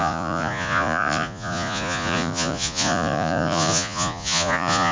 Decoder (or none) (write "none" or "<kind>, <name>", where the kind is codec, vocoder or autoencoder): vocoder, Vocos